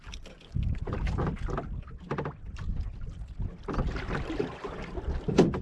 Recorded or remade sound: recorded